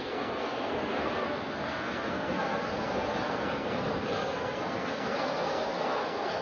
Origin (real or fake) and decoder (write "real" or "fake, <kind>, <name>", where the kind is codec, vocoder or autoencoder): fake, codec, SNAC